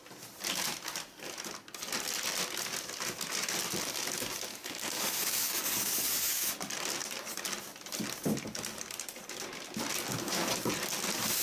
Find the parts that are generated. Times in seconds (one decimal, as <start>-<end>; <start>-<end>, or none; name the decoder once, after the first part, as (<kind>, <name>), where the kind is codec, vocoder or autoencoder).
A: 4.5-6.5 (codec, DAC)